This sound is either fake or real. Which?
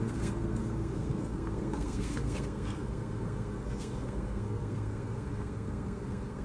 fake